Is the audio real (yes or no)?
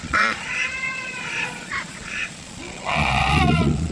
no